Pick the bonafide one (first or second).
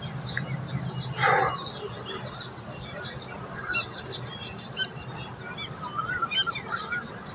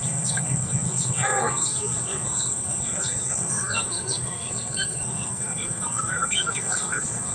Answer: first